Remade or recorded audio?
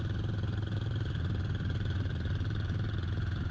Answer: recorded